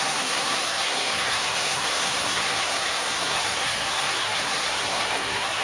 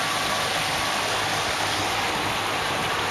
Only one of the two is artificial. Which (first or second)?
first